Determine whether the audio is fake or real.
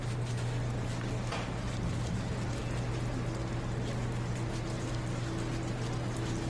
real